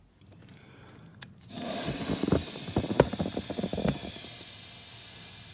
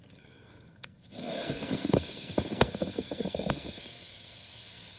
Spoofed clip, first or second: second